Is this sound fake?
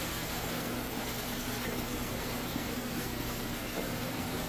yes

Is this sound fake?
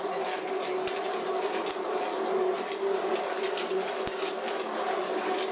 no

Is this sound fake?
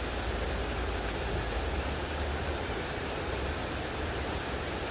no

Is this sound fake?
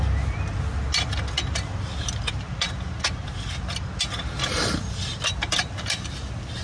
no